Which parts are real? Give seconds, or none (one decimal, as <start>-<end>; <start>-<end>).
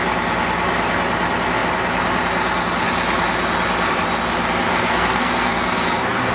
0.0-4.7